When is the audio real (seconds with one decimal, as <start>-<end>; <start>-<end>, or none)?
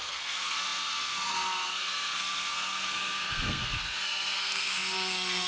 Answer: none